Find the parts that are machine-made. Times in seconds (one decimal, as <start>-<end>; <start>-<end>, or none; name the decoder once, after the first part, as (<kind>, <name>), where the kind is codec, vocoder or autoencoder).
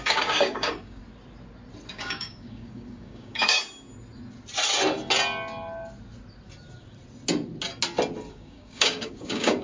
0.0-1.0 (codec, DAC); 1.9-3.6; 8.3-9.6